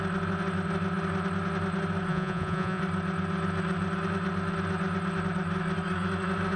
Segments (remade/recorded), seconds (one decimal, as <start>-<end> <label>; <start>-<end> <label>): 0.0-2.1 recorded; 2.1-2.8 remade; 2.8-6.6 recorded

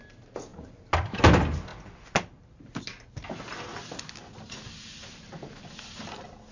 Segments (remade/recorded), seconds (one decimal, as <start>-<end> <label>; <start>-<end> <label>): 0.0-6.5 recorded

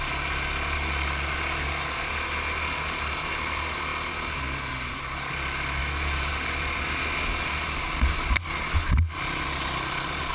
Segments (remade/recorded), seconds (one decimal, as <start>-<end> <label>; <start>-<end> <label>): 0.0-5.8 recorded; 5.8-6.3 remade; 6.3-10.3 recorded

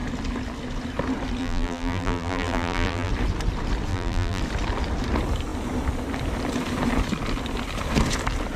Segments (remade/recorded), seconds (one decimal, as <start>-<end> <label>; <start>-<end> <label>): 0.0-1.4 recorded; 1.4-3.1 remade; 3.1-3.9 recorded; 3.9-4.4 remade; 4.4-8.6 recorded

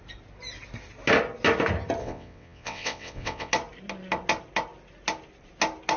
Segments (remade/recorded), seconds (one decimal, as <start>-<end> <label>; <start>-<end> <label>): 0.0-2.0 recorded; 2.0-3.5 remade; 3.5-6.0 recorded

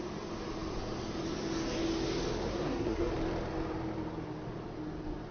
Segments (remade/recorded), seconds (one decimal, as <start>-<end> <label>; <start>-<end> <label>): 0.0-2.5 recorded; 2.5-3.1 remade; 3.1-5.3 recorded

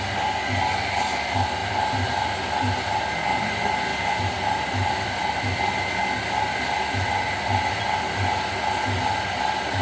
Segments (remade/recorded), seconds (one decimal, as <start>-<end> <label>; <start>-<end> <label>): 0.0-9.8 recorded